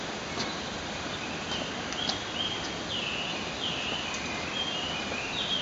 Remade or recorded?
recorded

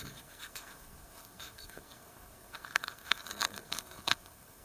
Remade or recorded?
remade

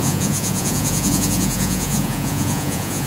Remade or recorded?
remade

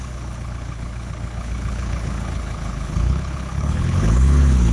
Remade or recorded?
remade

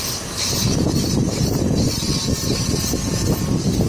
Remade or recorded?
recorded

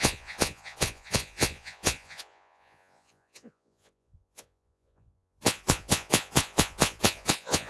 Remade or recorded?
remade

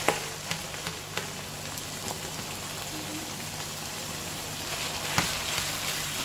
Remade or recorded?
recorded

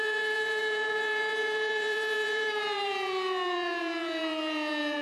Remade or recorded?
remade